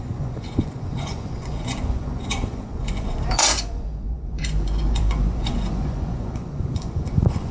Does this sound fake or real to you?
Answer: fake